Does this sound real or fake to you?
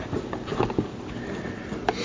real